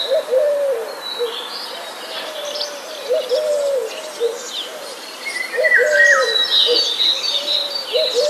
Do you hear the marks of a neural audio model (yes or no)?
yes